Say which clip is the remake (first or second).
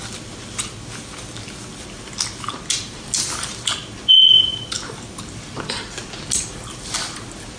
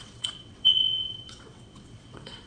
second